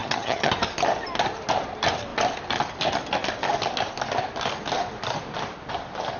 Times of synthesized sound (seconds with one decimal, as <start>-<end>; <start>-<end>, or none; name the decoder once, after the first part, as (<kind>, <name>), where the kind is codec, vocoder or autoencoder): 0.0-0.5 (vocoder, HiFi-GAN)